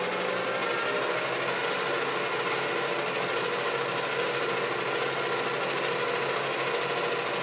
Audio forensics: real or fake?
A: real